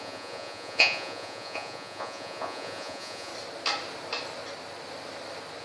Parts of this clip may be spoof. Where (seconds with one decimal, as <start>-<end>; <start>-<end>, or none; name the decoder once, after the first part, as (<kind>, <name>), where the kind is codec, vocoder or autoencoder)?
0.0-3.3 (vocoder, Vocos)